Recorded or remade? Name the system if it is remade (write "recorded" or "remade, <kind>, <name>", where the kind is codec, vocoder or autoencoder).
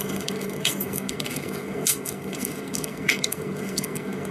remade, codec, SNAC